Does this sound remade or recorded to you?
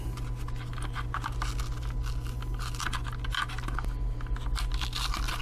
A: recorded